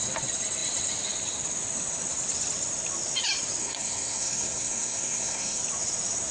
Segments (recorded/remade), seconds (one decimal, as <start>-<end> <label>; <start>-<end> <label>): 0.0-3.6 recorded; 3.6-5.6 remade; 5.6-6.3 recorded